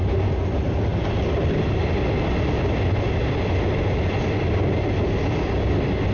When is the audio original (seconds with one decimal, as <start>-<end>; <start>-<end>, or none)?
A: 0.0-6.1